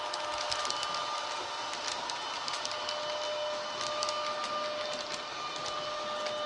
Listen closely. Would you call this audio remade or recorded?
recorded